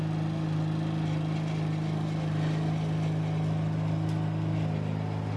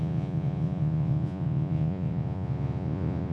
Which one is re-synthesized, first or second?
second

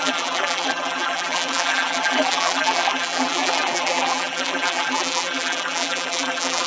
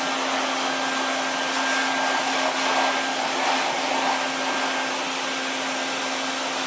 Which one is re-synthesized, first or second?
first